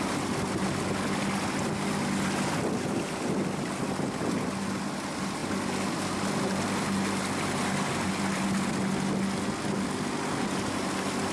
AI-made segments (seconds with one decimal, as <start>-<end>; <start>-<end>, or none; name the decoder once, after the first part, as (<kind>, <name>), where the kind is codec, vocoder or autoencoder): none